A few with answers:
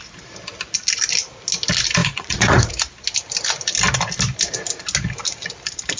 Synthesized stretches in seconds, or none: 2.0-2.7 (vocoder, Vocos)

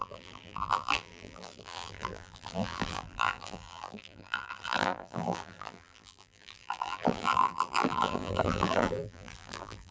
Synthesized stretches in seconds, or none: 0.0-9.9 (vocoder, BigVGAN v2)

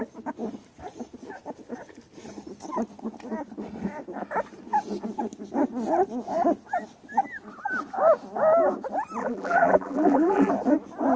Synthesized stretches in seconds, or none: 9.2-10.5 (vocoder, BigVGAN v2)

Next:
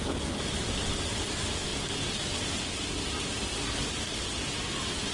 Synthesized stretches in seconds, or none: none

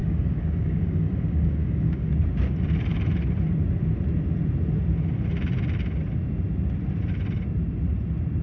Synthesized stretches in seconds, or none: 0.0-2.1 (codec, DAC)

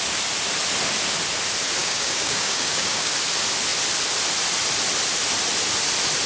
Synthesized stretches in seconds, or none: 1.8-3.1 (codec, DAC)

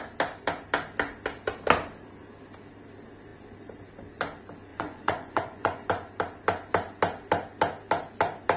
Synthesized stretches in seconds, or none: 4.7-5.9 (vocoder, Vocos)

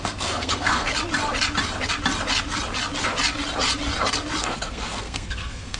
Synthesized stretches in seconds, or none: 0.0-0.9 (codec, SNAC); 4.4-5.8